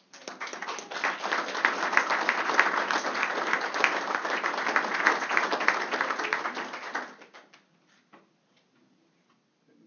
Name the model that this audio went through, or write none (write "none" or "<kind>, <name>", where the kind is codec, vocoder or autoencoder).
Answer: none